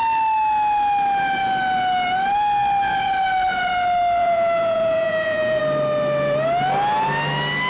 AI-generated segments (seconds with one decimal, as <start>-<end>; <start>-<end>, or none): 4.2-5.6